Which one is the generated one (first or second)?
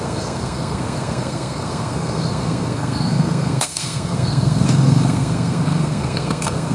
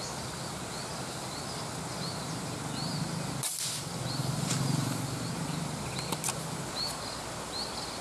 first